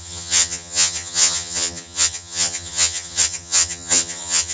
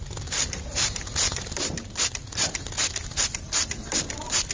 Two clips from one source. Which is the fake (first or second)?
first